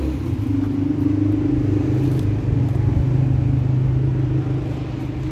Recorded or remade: recorded